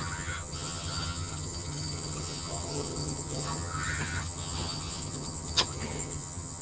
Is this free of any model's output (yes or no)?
no